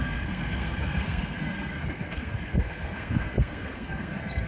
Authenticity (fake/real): fake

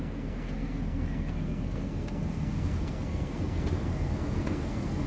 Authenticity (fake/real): fake